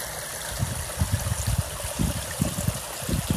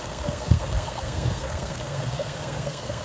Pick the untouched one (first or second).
first